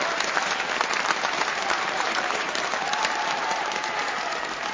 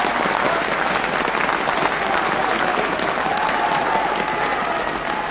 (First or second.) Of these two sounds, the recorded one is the second